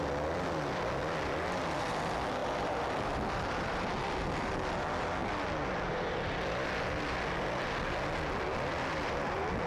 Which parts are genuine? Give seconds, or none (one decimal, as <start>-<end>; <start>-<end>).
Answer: 0.0-2.4; 3.8-8.7

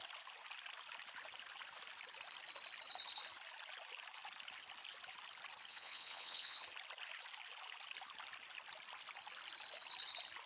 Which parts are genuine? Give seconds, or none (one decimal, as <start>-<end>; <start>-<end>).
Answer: 0.0-5.7; 6.6-10.5

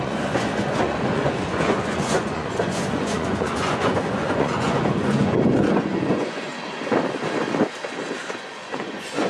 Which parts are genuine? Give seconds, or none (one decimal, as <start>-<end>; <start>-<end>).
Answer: 6.5-8.2

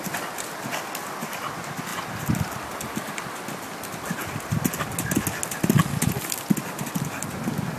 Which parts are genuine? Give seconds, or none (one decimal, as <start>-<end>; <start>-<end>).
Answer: 0.0-1.9; 4.7-7.8

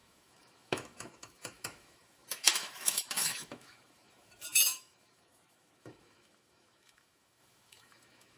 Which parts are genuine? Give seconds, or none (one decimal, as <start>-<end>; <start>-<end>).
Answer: none

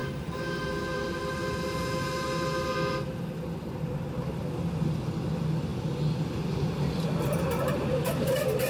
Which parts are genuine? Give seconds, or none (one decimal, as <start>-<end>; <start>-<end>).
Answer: 0.0-8.7

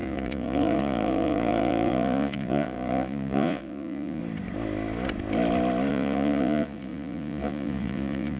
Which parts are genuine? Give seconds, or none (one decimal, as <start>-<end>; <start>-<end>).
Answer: 4.2-5.9